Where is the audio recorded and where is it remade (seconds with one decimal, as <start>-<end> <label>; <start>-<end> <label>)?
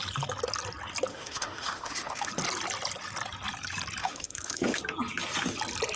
0.0-1.1 recorded; 1.1-2.3 remade; 2.3-4.0 recorded; 4.0-4.8 remade; 4.8-6.0 recorded